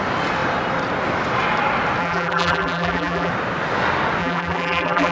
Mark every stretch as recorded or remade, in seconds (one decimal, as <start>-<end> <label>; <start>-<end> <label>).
0.0-2.0 recorded; 2.0-3.3 remade; 3.3-4.2 recorded; 4.2-5.1 remade